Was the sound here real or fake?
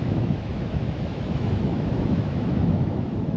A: fake